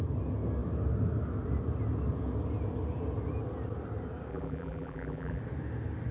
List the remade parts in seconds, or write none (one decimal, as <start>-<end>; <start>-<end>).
4.3-5.4